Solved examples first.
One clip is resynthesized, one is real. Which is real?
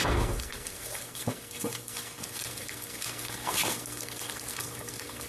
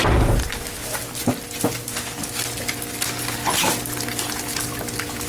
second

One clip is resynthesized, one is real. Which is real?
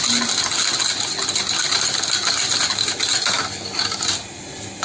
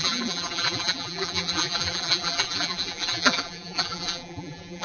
first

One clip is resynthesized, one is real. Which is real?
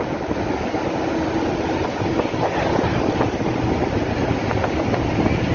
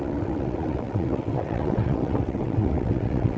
first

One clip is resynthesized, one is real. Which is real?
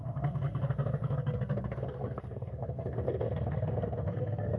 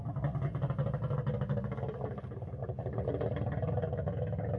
second